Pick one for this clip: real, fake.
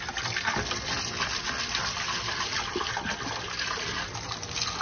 real